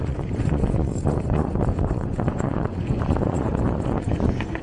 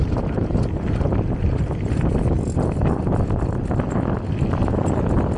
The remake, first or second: first